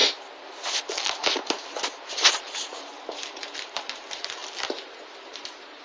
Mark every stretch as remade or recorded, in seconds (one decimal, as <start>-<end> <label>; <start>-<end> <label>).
0.0-2.1 recorded; 2.1-4.4 remade; 4.4-5.2 recorded; 5.2-5.8 remade